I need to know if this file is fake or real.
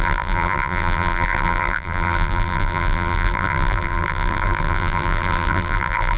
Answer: fake